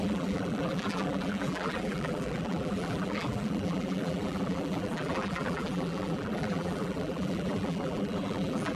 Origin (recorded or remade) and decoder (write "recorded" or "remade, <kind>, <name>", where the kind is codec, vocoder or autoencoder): remade, vocoder, BigVGAN v2